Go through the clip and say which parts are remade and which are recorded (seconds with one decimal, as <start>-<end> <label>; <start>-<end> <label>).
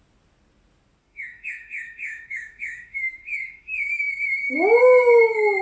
0.0-1.0 recorded; 1.0-4.4 remade; 4.4-5.6 recorded